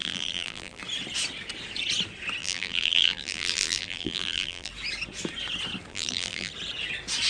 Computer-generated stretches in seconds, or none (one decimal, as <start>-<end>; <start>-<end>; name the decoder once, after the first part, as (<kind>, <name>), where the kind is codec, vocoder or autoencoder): 0.0-0.8 (vocoder, BigVGAN v2); 2.4-4.7; 5.9-6.5